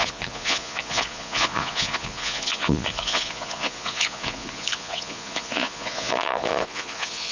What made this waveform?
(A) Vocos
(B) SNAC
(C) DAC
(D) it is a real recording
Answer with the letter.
A